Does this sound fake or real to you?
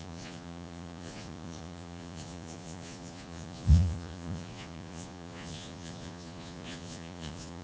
fake